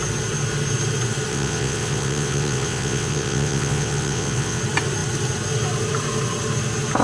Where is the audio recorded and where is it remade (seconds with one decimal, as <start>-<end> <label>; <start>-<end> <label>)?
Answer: 0.0-1.3 recorded; 1.3-4.6 remade; 4.6-7.0 recorded